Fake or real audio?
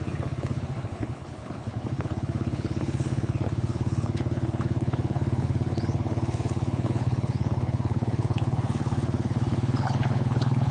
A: fake